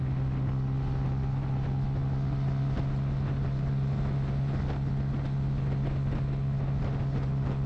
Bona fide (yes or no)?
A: yes